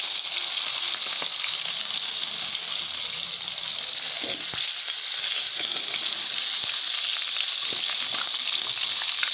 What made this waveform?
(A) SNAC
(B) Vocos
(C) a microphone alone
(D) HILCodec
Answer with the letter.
C